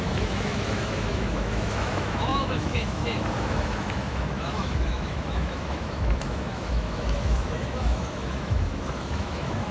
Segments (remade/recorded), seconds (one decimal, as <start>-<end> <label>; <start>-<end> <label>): 0.0-9.7 remade